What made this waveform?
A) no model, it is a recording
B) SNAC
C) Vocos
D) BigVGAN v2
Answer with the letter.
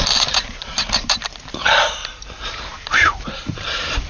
D